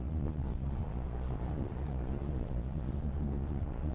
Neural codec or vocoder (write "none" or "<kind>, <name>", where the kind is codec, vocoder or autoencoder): vocoder, Vocos